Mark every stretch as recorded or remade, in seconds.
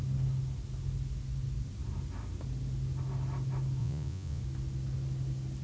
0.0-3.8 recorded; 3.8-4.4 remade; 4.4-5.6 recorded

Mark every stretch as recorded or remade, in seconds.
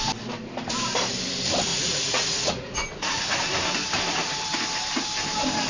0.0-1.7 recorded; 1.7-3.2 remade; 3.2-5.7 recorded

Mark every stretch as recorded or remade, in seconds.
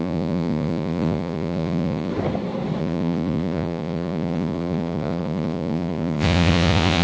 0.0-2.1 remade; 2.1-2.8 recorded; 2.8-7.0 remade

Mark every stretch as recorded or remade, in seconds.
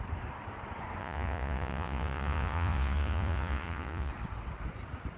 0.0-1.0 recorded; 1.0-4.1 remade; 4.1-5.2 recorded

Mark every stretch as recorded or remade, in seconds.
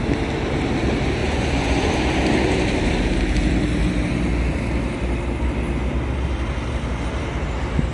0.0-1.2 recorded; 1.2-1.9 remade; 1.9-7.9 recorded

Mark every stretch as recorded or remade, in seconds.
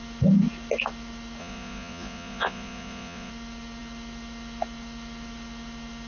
0.0-1.4 recorded; 1.4-3.3 remade; 3.3-6.1 recorded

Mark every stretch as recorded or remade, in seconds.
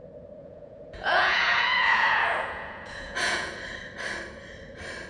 0.0-0.4 recorded; 0.4-3.5 remade; 3.5-5.1 recorded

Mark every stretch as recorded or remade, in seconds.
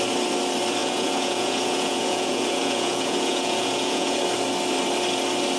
0.0-0.8 recorded; 0.8-4.2 remade; 4.2-5.6 recorded